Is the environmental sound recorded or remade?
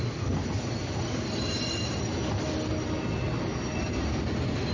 recorded